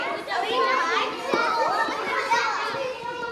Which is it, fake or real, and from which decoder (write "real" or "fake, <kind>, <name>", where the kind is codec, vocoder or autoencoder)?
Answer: real